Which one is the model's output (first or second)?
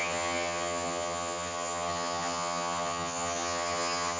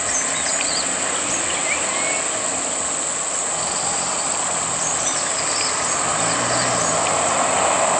first